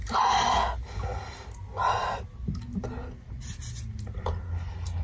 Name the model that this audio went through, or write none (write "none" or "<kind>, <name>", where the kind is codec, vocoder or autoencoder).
none